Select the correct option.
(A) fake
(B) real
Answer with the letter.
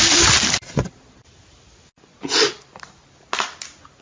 B